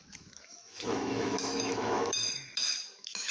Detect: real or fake fake